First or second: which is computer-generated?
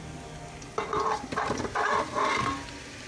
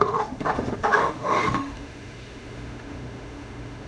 second